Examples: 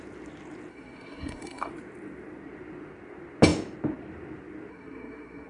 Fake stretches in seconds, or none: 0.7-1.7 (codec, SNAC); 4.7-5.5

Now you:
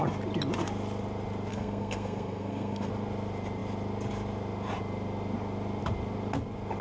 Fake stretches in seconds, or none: 1.5-2.9 (codec, SNAC)

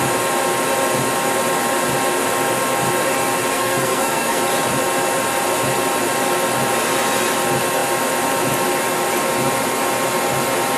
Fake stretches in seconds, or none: 3.5-4.4 (codec, SNAC)

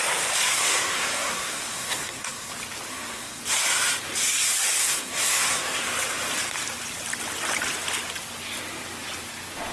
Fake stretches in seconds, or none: 0.5-2.5 (codec, SNAC); 2.9-3.4; 4.8-5.8

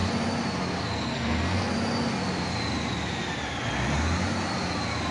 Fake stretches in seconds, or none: 0.8-1.7 (codec, SNAC)

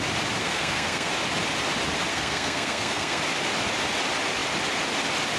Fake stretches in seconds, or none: 0.4-1.1 (codec, SNAC); 2.1-3.2

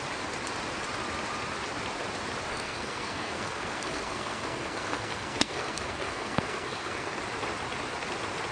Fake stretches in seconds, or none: 2.5-7.2 (codec, SNAC)